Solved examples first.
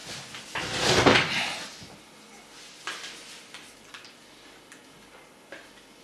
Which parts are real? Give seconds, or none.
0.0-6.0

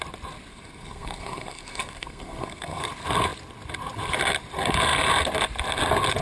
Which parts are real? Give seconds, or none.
0.0-0.5; 2.9-6.2

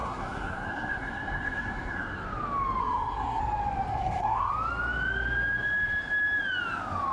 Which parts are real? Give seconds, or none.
2.2-2.8; 3.4-3.9; 4.5-7.1

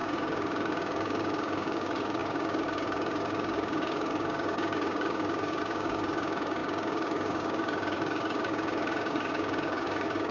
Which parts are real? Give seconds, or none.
none

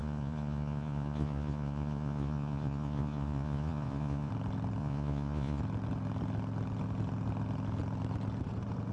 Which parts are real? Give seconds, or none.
4.3-4.8; 5.6-8.9

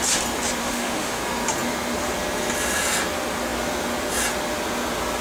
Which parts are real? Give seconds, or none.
0.0-0.6; 1.2-5.2

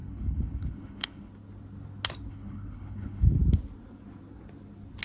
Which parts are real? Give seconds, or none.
1.3-2.3; 3.4-5.0